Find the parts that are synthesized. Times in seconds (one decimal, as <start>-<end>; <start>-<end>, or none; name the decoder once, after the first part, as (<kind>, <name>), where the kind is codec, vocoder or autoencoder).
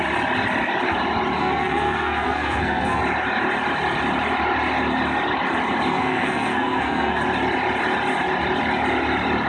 1.4-3.0 (codec, SNAC); 5.9-7.2